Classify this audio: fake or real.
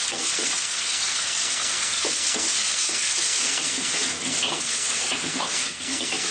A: fake